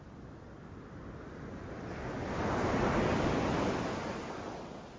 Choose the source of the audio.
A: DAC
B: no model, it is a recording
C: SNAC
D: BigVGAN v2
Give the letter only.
B